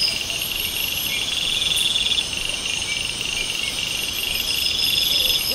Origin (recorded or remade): recorded